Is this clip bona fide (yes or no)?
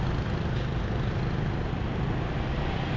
yes